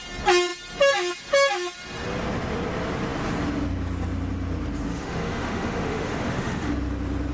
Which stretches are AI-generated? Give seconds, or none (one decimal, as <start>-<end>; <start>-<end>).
4.9-6.7